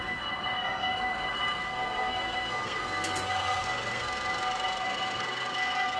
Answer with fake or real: fake